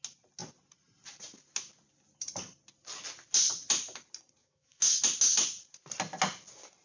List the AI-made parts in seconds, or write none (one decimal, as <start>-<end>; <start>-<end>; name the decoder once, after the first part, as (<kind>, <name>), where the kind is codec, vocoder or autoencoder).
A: 4.4-5.0 (autoencoder, DAC-VAE)